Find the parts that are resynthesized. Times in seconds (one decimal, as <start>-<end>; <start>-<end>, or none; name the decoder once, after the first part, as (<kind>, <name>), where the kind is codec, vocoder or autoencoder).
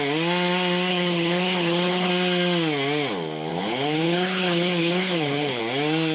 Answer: 0.9-2.1 (codec, HILCodec); 3.5-5.6